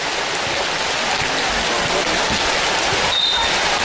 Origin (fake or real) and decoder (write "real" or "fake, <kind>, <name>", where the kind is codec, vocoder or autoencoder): real